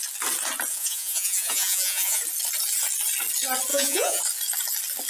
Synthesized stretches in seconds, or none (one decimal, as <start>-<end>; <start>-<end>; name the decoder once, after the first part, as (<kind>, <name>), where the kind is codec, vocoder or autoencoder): 0.7-2.2 (vocoder, Vocos); 3.7-4.2